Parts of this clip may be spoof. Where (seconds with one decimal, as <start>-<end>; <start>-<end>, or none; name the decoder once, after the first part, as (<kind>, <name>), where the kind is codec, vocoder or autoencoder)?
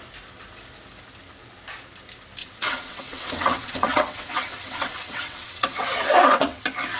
2.4-6.6 (vocoder, WaveNeXt)